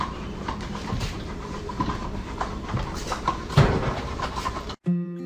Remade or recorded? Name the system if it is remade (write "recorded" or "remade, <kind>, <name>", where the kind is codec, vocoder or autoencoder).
remade, vocoder, BigVGAN v2